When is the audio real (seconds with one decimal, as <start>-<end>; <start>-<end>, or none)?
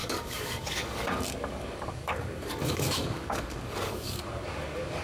none